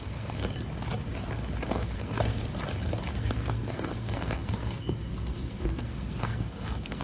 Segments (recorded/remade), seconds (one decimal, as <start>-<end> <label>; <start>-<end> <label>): 0.0-0.4 remade; 0.4-1.7 recorded; 1.7-2.4 remade; 2.4-3.1 recorded; 3.1-7.0 remade